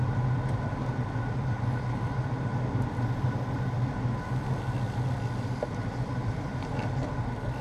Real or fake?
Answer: real